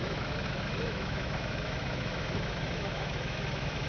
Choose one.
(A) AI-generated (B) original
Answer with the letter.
A